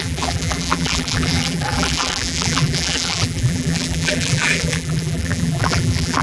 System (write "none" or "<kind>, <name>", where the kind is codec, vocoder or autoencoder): vocoder, BigVGAN v2